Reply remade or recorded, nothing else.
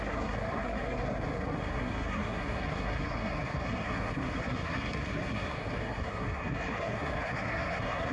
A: remade